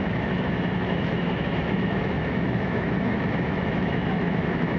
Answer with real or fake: fake